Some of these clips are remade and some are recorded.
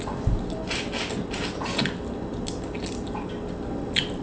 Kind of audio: recorded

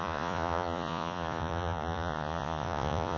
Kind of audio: remade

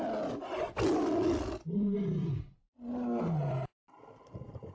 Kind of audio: recorded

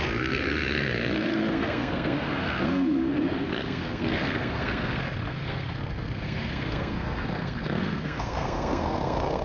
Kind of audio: remade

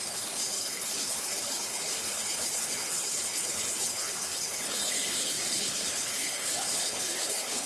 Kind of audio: remade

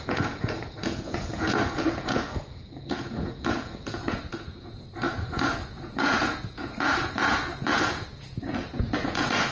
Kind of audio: remade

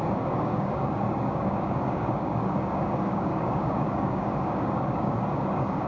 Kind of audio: remade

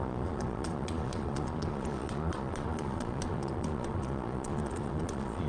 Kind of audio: remade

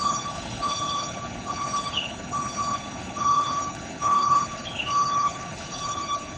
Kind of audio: remade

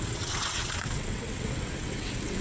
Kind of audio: remade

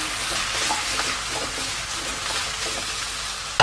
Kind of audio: recorded